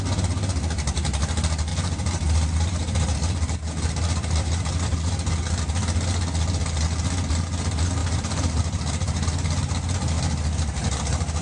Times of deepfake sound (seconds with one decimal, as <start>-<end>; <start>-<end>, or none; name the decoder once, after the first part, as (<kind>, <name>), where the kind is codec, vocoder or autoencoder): 1.7-5.3 (vocoder, BigVGAN v2); 8.0-9.3